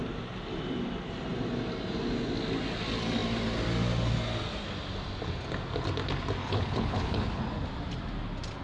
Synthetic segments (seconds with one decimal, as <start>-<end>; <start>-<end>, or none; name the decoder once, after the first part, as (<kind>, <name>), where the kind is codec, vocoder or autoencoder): 6.4-7.4 (codec, HILCodec)